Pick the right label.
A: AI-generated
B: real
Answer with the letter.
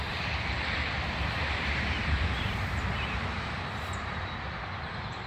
A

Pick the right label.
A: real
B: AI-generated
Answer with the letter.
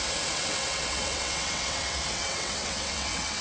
B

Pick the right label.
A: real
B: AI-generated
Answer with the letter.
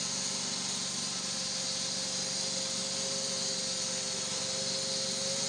A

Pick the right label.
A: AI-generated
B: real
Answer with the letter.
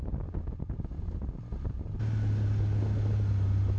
B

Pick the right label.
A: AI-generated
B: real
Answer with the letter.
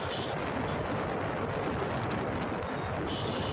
B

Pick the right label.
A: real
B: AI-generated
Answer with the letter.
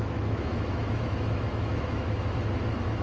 B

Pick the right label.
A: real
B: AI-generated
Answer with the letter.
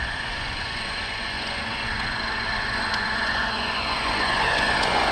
B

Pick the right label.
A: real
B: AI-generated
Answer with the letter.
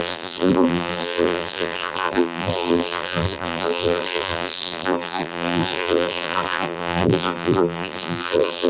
B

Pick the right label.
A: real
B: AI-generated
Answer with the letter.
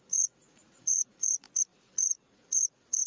B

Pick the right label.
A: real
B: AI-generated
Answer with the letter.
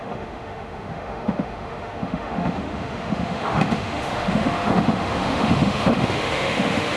B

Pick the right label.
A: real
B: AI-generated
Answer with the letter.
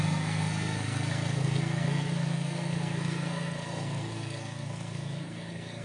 B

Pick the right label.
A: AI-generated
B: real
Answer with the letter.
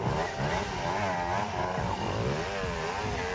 B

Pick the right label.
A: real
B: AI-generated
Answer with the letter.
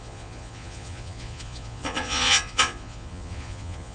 B